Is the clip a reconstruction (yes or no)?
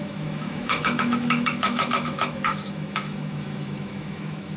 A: yes